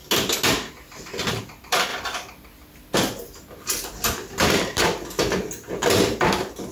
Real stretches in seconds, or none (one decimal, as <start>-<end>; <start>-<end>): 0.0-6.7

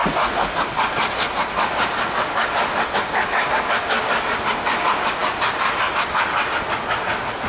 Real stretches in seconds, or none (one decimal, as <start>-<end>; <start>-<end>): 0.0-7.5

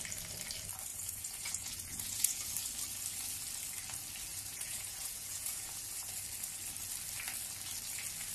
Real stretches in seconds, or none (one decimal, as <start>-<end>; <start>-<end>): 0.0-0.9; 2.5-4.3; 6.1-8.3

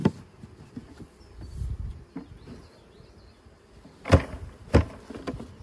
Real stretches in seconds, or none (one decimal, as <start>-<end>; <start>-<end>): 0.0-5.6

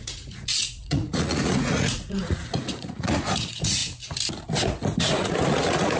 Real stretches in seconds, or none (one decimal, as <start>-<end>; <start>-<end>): 3.8-5.1

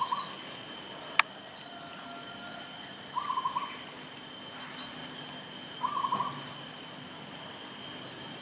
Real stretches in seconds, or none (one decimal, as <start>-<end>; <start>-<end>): 0.0-8.4